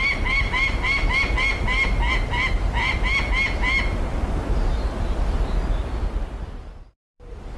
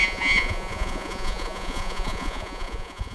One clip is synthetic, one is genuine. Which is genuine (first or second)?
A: first